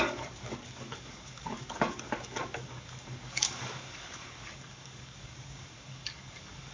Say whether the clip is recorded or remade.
remade